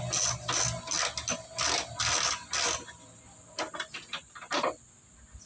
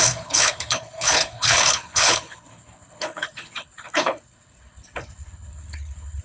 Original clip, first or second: first